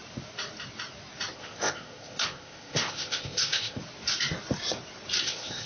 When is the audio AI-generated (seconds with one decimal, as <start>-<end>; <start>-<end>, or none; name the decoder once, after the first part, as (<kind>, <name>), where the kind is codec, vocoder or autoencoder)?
1.3-3.8 (codec, ZipCodec); 5.2-5.7